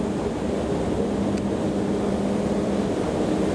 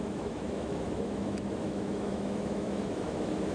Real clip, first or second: first